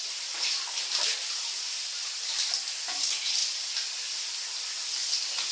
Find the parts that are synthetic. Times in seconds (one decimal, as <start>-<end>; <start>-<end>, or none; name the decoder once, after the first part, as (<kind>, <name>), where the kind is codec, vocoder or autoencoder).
none